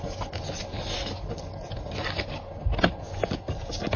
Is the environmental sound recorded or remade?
recorded